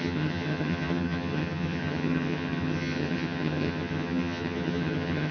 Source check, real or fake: fake